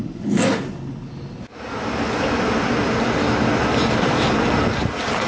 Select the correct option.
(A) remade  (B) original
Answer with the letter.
B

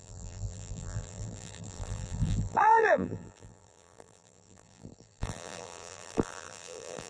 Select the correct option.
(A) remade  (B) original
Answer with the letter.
A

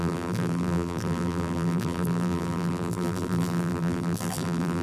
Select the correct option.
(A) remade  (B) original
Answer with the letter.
A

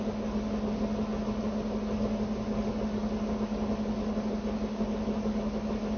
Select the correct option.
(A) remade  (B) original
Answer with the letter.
B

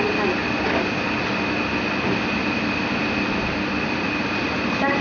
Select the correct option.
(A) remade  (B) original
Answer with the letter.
B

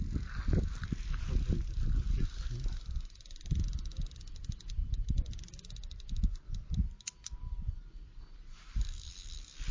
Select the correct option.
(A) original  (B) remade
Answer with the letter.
A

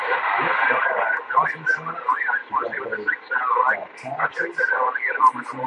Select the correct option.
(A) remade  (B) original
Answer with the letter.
B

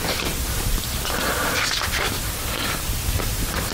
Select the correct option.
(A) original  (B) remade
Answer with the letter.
B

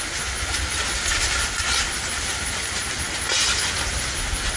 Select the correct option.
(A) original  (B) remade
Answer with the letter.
A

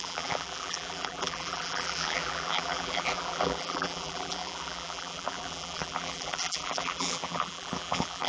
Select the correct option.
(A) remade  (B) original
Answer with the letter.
A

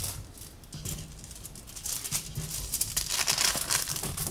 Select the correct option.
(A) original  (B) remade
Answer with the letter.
A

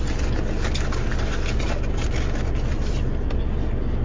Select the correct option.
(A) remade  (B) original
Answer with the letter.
B